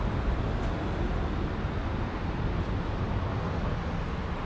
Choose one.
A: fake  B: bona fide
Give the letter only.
B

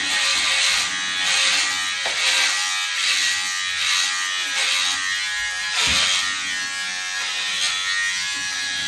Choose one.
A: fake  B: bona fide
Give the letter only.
B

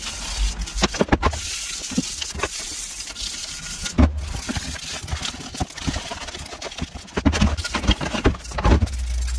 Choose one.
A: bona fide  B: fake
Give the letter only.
A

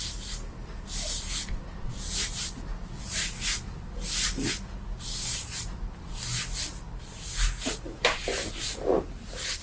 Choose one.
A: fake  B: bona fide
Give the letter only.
B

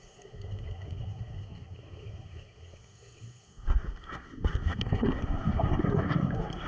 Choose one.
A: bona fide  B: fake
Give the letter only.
B